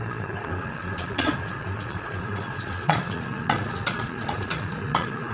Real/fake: fake